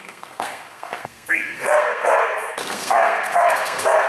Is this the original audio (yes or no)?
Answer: no